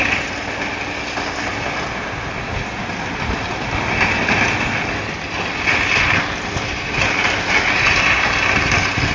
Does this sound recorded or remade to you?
recorded